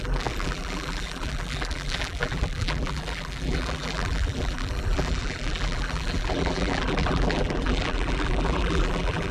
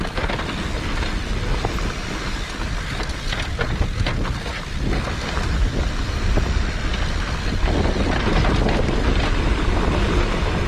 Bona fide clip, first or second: second